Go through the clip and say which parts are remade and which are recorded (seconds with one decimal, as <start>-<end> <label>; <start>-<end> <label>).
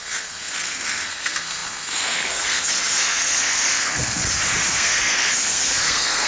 0.0-4.2 remade; 4.2-4.7 recorded; 4.7-6.3 remade